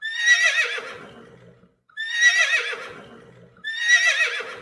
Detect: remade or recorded recorded